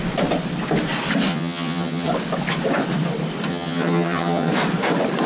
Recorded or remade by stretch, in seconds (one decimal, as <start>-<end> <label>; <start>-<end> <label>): 0.0-1.3 recorded; 1.3-2.1 remade; 2.1-3.5 recorded; 3.5-4.5 remade; 4.5-5.3 recorded